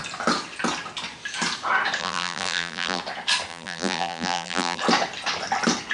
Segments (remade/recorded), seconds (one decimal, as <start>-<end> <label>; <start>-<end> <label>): 0.0-2.0 recorded; 2.0-3.0 remade; 3.0-3.5 recorded; 3.5-4.8 remade; 4.8-5.9 recorded